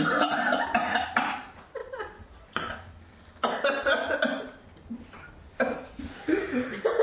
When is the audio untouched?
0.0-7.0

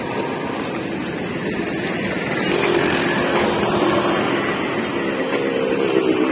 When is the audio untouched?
0.0-6.3

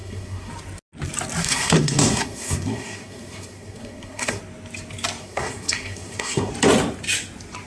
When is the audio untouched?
0.5-1.4; 4.4-5.2; 6.5-7.7

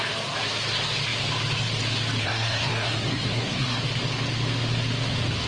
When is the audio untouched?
0.0-2.2; 3.8-5.5

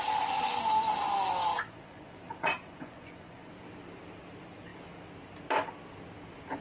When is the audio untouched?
0.0-1.5; 3.5-6.6

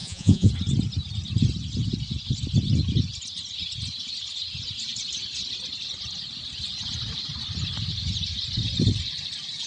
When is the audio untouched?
0.5-9.7

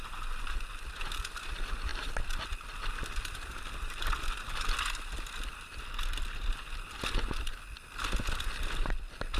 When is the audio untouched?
0.0-9.4